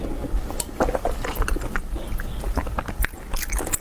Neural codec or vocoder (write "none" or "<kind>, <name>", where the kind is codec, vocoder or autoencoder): none